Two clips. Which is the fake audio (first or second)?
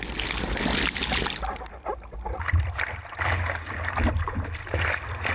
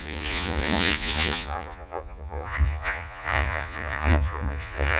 second